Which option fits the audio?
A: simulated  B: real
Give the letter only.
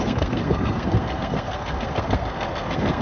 A